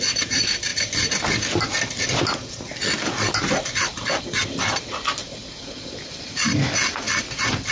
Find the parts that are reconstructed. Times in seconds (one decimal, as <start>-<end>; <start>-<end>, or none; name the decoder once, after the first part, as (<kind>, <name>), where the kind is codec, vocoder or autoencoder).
none